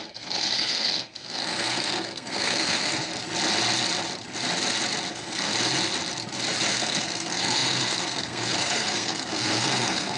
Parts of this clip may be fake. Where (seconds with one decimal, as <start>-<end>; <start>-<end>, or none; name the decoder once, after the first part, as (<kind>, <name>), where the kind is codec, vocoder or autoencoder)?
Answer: 0.0-3.1 (codec, SNAC); 5.1-5.5; 6.7-10.2